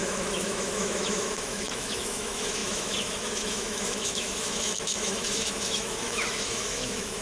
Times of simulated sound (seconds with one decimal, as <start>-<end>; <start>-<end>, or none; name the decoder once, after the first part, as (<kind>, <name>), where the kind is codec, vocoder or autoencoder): 0.0-7.2 (autoencoder, DAC-VAE)

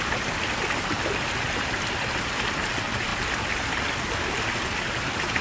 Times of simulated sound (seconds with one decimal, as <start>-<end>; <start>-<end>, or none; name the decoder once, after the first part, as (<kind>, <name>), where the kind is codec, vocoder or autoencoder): none

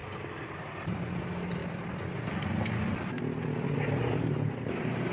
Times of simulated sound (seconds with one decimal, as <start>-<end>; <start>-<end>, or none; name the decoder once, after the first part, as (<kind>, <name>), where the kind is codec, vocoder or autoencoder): 0.0-1.2 (vocoder, BigVGAN v2)